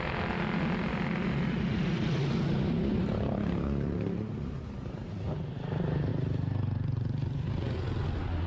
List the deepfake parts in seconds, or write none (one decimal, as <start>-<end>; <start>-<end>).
2.9-5.1; 6.1-7.5